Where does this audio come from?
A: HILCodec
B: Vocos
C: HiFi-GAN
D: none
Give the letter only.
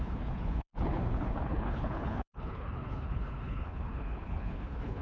A